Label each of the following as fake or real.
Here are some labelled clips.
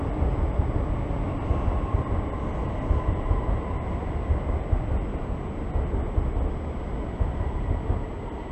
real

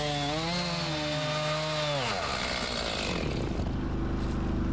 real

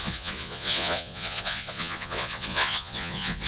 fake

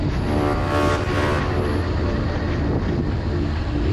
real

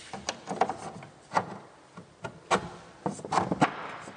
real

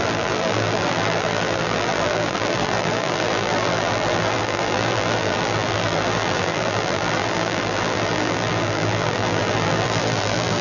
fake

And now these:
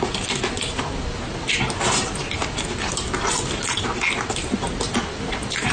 real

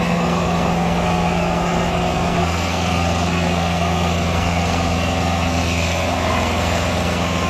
fake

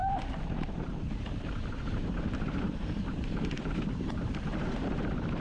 fake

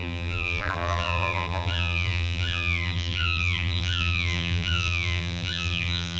fake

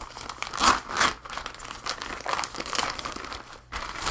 real